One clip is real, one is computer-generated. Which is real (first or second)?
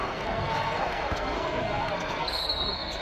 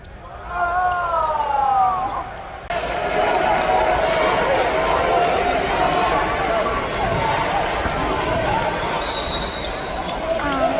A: second